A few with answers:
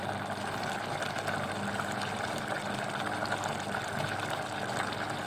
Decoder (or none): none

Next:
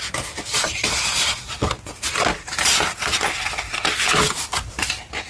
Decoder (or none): none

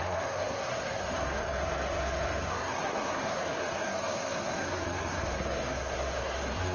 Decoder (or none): codec, SNAC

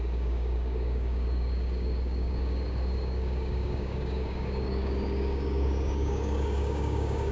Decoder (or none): codec, DAC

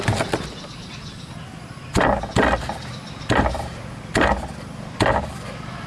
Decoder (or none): none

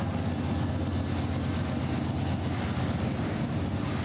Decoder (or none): none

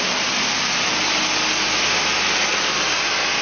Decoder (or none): none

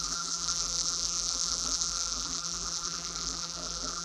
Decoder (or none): vocoder, BigVGAN v2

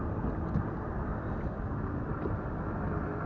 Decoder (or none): none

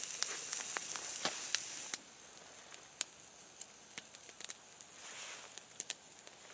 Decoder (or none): none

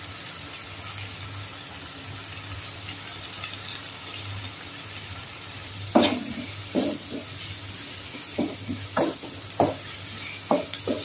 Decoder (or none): none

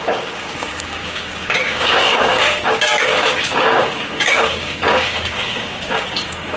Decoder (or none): codec, DAC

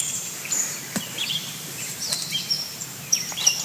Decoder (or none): vocoder, BigVGAN v2